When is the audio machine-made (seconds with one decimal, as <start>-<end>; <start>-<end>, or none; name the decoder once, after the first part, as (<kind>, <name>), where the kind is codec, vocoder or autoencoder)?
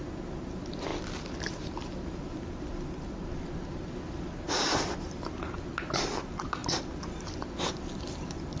none